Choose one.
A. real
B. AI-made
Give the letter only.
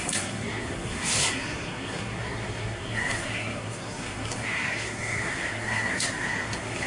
B